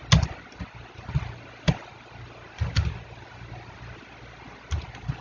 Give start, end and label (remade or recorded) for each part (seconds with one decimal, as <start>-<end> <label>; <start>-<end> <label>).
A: 0.0-5.2 recorded